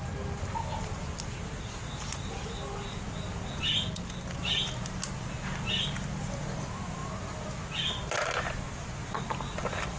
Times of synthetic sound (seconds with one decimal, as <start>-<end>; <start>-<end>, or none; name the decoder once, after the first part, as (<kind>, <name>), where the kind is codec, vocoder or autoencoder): none